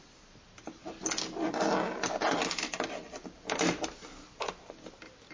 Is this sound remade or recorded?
recorded